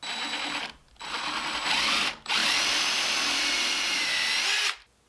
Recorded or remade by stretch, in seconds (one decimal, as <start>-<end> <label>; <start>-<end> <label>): 0.0-2.4 recorded; 2.4-4.1 remade; 4.1-5.1 recorded

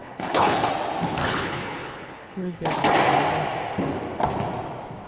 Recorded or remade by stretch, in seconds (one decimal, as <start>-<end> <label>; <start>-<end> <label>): 0.0-0.7 remade; 0.7-1.2 recorded; 1.2-2.6 remade; 2.6-5.1 recorded

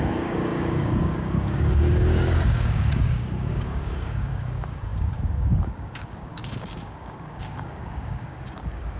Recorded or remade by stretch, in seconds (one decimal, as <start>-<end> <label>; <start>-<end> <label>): 0.0-9.0 remade

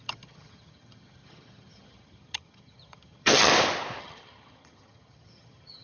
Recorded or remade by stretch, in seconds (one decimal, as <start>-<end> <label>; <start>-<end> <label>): 0.0-3.5 remade; 3.5-4.0 recorded; 4.0-5.8 remade

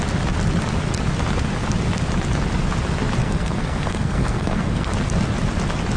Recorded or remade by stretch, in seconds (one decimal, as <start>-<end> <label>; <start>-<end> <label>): 0.0-3.2 recorded; 3.2-4.9 remade; 4.9-6.0 recorded